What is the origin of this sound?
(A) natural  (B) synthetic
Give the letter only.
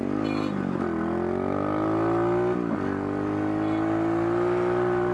A